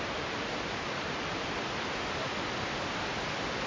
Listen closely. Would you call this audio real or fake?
real